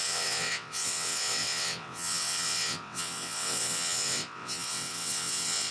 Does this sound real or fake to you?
fake